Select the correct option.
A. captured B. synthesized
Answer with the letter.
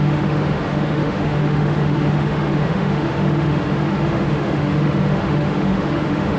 B